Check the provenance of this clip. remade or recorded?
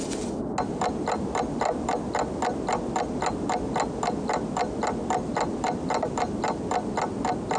recorded